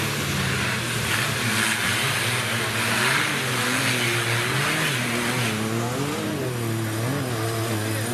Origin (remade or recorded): recorded